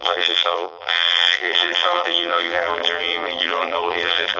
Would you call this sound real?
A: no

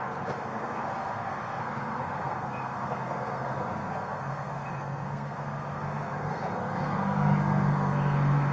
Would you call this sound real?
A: no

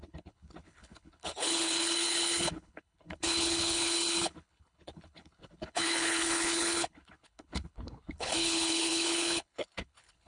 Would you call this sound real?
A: no